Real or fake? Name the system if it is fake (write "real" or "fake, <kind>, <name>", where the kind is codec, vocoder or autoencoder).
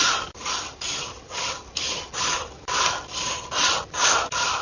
real